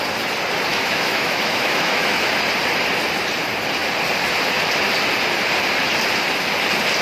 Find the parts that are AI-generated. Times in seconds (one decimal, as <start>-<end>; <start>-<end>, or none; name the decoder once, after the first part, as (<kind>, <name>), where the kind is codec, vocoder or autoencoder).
0.7-2.3 (autoencoder, DAC-VAE)